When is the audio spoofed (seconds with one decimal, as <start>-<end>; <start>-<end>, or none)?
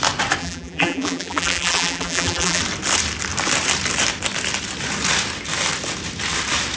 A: 0.4-2.6